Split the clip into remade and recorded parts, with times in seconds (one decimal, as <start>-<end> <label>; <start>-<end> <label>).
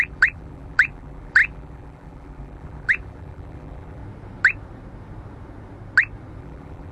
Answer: 0.0-4.0 remade; 4.0-6.4 recorded; 6.4-6.9 remade